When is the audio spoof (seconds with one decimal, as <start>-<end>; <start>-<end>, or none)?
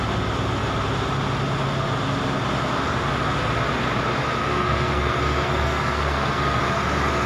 4.4-6.6